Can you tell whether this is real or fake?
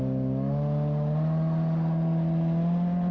real